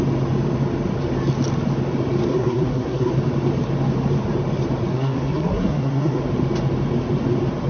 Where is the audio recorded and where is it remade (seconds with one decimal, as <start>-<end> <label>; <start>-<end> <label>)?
0.0-2.3 recorded; 2.3-3.1 remade; 3.1-4.9 recorded; 4.9-6.2 remade; 6.2-7.7 recorded